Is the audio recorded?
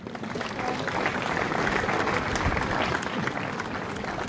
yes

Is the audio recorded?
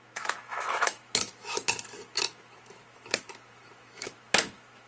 no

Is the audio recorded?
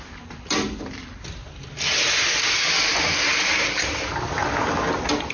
yes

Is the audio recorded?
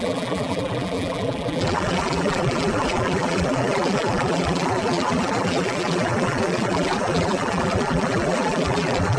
no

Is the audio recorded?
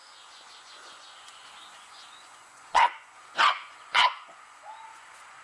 no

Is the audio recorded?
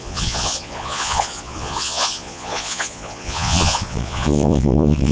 no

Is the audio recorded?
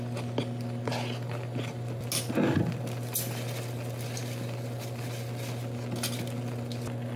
yes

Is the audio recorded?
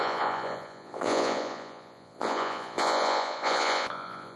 no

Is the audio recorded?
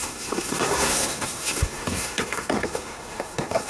no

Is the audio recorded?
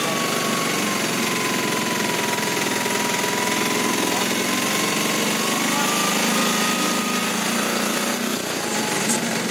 yes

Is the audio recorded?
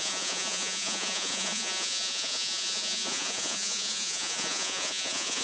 no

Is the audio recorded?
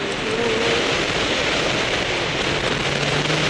yes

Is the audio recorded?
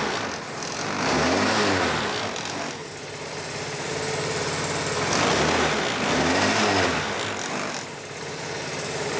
yes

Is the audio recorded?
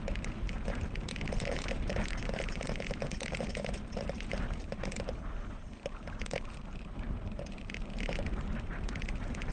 no